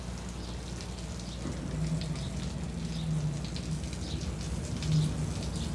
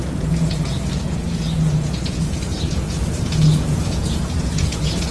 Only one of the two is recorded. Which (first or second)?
first